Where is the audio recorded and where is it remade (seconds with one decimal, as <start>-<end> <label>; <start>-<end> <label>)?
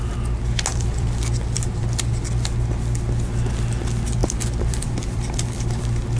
0.0-0.7 recorded; 0.7-2.1 remade; 2.1-4.2 recorded; 4.2-5.8 remade; 5.8-6.2 recorded